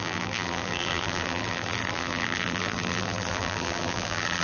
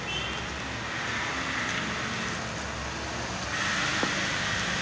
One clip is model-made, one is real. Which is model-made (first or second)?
first